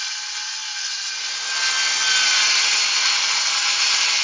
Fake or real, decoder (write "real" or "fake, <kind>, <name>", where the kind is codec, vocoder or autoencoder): real